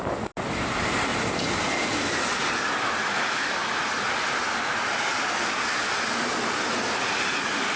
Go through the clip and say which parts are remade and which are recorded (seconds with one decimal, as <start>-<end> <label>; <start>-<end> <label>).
0.0-3.0 recorded; 3.0-3.5 remade; 3.5-7.8 recorded